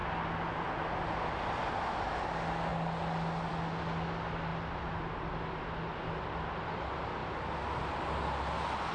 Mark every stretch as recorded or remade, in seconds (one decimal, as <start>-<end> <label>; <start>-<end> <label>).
0.0-8.9 recorded